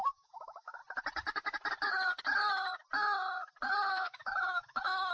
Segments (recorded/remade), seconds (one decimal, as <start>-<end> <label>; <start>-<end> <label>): 0.0-0.8 remade; 0.8-3.9 recorded; 3.9-5.1 remade